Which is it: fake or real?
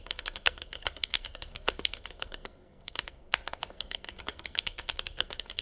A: fake